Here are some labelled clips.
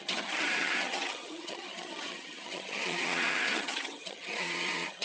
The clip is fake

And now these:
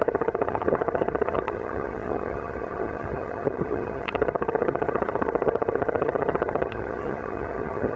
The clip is fake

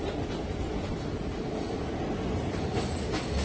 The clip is real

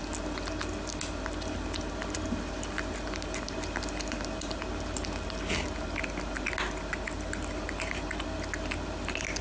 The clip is real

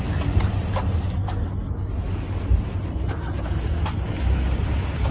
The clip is real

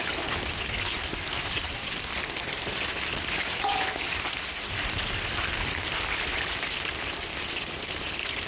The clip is real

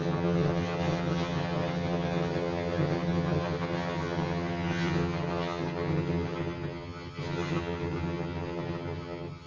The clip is fake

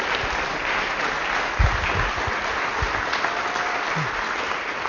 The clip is real